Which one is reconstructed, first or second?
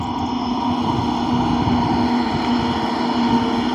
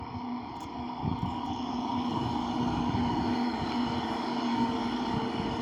second